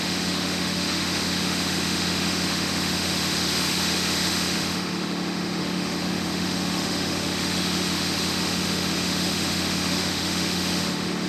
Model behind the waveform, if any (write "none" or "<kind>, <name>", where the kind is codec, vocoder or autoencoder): autoencoder, DAC-VAE